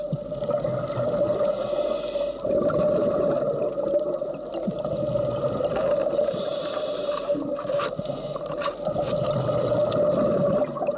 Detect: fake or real real